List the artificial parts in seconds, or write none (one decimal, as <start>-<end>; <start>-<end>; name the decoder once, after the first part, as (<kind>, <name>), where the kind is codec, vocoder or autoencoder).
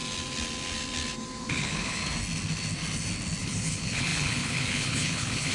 1.4-2.0 (codec, HILCodec); 3.4-5.5